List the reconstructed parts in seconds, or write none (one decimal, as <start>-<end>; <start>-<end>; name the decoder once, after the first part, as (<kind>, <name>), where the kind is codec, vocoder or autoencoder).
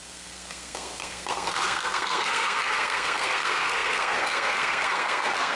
0.0-5.5 (codec, SNAC)